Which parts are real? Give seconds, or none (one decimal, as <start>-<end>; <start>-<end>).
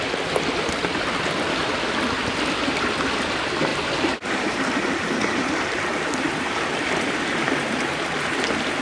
0.0-3.7; 6.4-8.8